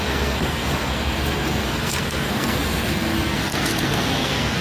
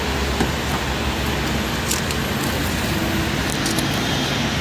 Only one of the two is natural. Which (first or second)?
second